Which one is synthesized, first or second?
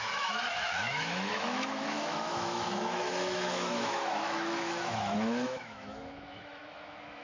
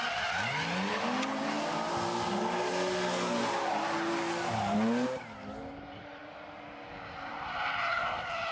first